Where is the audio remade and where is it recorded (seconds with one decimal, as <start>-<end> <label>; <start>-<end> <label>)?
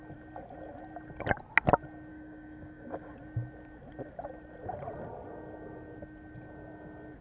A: 0.0-2.1 recorded; 2.1-3.1 remade; 3.1-7.2 recorded